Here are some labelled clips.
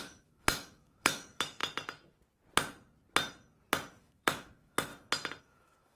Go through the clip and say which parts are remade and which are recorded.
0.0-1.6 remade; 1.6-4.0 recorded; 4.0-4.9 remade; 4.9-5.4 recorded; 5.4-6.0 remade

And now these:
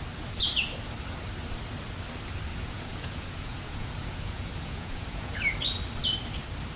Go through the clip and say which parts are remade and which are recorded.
0.0-2.5 recorded; 2.5-5.3 remade; 5.3-6.8 recorded

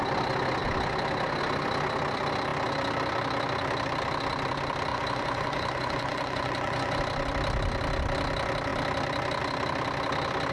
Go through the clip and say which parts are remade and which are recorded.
0.0-4.9 recorded; 4.9-7.0 remade; 7.0-10.5 recorded

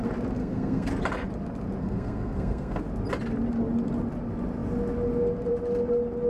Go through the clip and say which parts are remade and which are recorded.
0.0-0.4 recorded; 0.4-0.9 remade; 0.9-1.8 recorded; 1.8-2.8 remade; 2.8-6.3 recorded

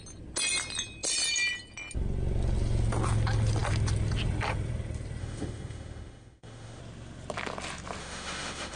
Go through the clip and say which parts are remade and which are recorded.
0.0-5.2 recorded; 5.2-6.8 remade; 6.8-8.0 recorded; 8.0-8.8 remade

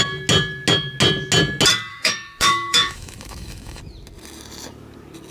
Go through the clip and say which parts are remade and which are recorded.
0.0-1.9 recorded; 1.9-3.8 remade; 3.8-5.3 recorded

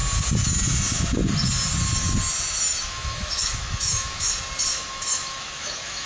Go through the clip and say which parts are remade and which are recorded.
0.0-2.7 recorded; 2.7-4.3 remade; 4.3-4.7 recorded; 4.7-6.1 remade

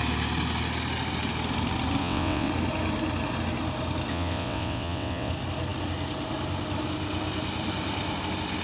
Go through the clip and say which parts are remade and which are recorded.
0.0-2.0 recorded; 2.0-2.5 remade; 2.5-4.1 recorded; 4.1-5.3 remade; 5.3-8.6 recorded